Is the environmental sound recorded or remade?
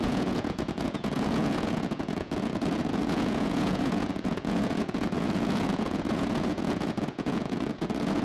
remade